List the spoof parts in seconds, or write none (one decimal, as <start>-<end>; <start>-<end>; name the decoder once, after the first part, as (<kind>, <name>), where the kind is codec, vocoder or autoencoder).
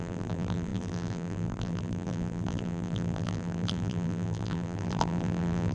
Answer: 0.0-5.7 (vocoder, BigVGAN v2)